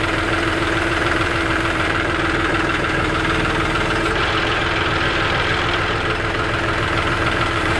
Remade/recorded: remade